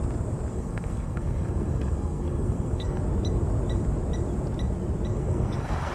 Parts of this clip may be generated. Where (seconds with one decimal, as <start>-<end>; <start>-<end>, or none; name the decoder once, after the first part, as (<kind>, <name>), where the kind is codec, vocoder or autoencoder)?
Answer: 0.5-3.0 (codec, SNAC); 5.1-5.9